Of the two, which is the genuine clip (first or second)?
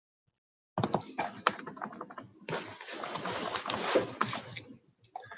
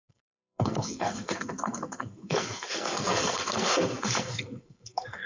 first